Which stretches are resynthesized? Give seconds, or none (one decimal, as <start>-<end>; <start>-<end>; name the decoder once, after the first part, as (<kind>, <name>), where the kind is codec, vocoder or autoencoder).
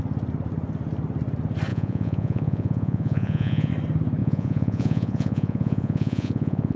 1.7-3.7 (vocoder, Vocos); 4.2-6.8